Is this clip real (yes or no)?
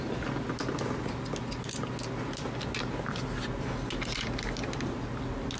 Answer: yes